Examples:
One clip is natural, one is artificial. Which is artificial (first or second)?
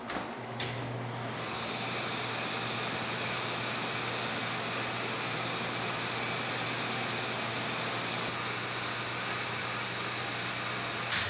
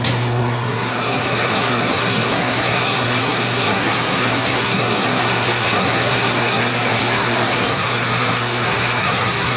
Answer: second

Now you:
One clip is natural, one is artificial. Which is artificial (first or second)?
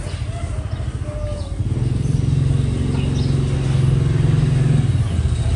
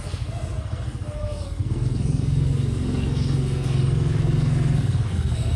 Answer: second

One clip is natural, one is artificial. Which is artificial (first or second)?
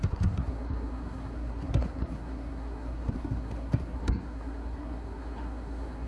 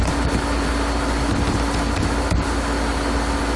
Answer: first